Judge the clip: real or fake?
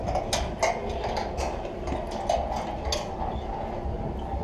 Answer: real